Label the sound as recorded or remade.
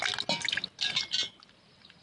recorded